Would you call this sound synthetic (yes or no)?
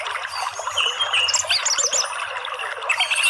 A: no